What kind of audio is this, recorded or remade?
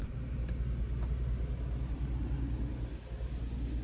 recorded